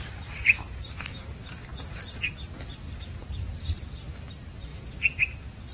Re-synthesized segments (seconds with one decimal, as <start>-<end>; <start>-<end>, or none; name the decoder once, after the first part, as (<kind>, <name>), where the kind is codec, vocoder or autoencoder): 0.0-5.7 (vocoder, BigVGAN v2)

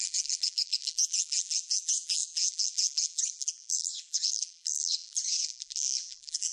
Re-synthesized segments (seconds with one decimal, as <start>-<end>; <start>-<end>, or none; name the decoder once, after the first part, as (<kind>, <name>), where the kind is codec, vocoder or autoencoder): 0.0-6.5 (vocoder, BigVGAN v2)